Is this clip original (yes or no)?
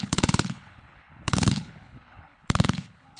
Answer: no